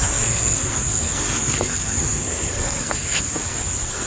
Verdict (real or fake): fake